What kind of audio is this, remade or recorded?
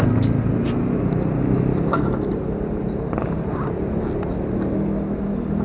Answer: recorded